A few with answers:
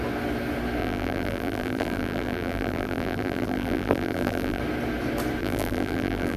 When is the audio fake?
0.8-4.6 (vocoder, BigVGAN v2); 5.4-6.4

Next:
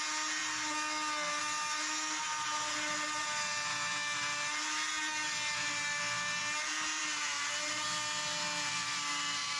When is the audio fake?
8.7-9.6 (codec, SNAC)